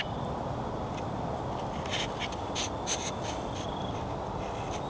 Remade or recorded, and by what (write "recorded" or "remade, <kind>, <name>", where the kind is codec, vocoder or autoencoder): recorded